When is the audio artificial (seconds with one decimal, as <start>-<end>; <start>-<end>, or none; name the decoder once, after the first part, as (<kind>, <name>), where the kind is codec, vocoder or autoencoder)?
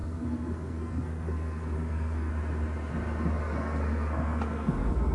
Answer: 0.0-2.3 (codec, SNAC); 3.4-5.1